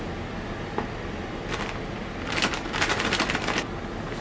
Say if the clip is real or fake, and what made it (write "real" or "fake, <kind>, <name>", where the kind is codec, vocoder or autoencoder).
real